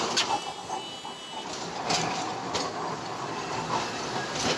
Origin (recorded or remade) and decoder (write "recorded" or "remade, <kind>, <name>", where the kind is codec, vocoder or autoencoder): recorded